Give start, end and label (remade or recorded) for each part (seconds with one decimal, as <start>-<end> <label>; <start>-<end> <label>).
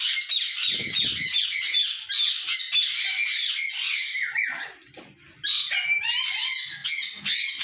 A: 0.0-7.6 recorded